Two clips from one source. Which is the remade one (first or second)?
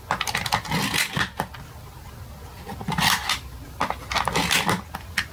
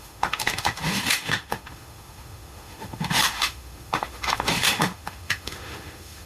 second